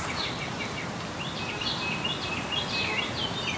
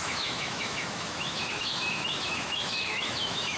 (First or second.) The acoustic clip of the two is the first